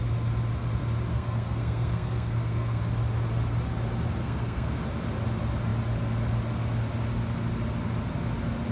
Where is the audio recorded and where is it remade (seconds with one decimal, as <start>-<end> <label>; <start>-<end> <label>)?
0.0-1.1 recorded; 1.1-2.8 remade; 2.8-4.2 recorded; 4.2-4.8 remade; 4.8-8.7 recorded